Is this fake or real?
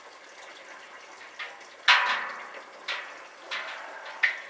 real